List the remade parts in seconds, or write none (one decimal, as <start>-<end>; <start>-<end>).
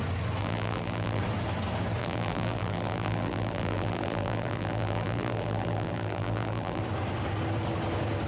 0.4-1.2; 2.0-6.8